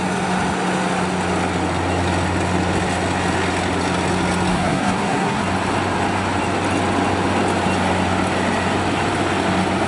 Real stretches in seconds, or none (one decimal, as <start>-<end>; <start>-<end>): 0.0-4.5; 5.4-9.9